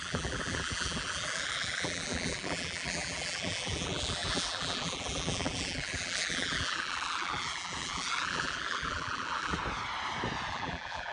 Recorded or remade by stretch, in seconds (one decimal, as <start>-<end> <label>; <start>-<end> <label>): 0.0-9.6 remade; 9.6-10.5 recorded; 10.5-11.1 remade